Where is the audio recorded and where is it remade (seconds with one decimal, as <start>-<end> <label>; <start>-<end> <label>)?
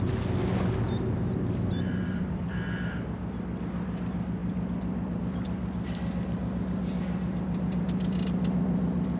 0.0-9.2 recorded